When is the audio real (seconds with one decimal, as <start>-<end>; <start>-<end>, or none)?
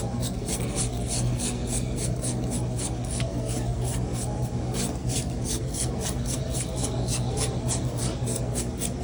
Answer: none